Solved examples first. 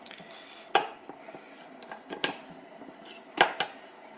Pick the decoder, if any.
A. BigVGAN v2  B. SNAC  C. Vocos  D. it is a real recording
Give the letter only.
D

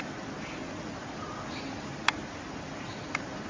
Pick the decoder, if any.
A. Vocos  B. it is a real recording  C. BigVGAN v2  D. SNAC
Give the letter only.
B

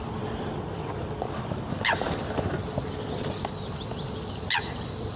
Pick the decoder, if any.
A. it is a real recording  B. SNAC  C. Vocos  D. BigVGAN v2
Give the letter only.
A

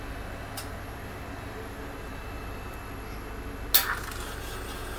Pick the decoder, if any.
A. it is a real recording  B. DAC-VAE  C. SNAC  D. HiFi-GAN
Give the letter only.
A